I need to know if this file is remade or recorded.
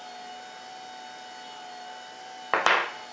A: recorded